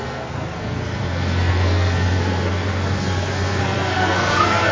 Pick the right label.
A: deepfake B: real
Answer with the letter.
A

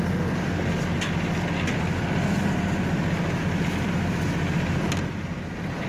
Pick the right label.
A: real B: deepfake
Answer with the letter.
A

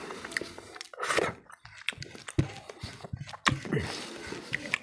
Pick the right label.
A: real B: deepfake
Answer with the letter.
A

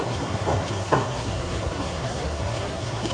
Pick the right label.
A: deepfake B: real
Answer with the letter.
A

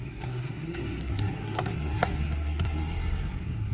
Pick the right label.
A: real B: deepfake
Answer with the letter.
B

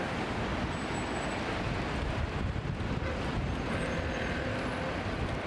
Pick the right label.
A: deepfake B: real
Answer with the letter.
B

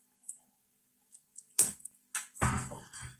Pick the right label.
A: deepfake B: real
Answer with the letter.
A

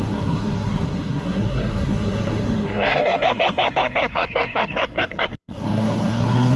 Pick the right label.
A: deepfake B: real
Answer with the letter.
A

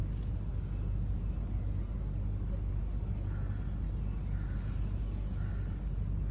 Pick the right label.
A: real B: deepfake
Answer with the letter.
A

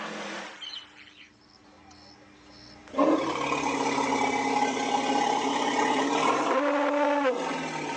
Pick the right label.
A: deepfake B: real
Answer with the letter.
B